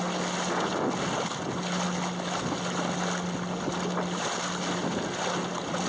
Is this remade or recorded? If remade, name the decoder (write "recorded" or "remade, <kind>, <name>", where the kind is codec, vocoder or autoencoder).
recorded